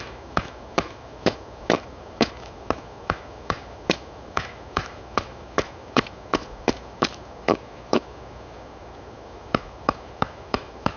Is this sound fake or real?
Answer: fake